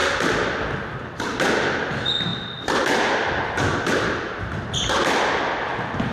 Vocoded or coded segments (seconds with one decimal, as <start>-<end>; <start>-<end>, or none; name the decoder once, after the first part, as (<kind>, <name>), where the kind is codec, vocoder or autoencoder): none